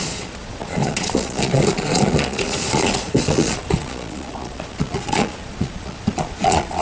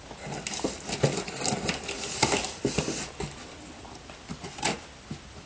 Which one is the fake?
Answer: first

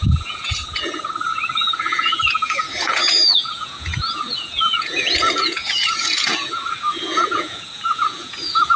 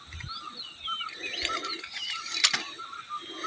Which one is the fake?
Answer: first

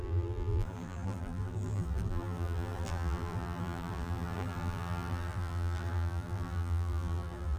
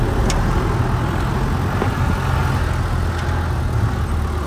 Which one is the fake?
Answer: first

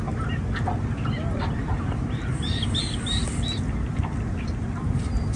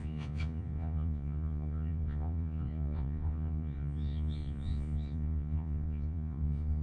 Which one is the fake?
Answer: second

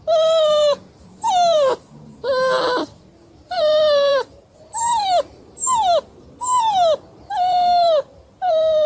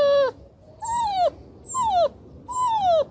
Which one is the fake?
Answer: first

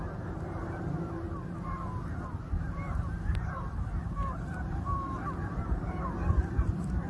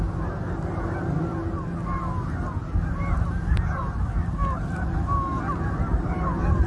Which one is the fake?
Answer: first